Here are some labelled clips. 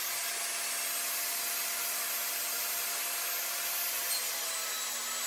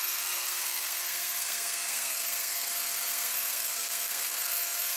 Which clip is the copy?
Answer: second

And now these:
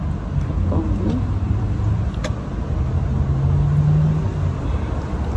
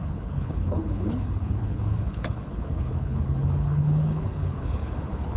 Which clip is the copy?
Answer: second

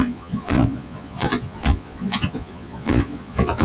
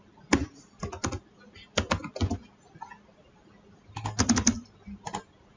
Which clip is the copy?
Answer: first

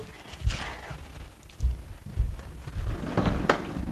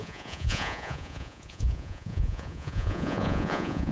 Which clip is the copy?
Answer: second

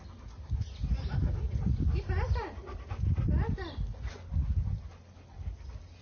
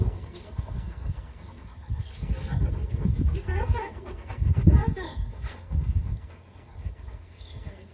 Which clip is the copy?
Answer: second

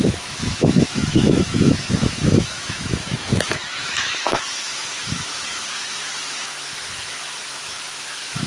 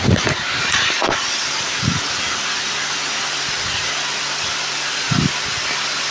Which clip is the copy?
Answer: first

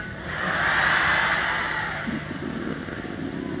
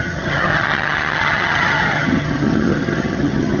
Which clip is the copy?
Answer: second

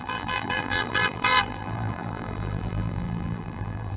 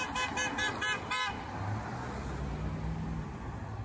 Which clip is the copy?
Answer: first